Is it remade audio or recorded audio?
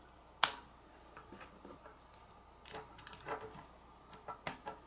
recorded